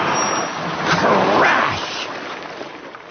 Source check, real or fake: real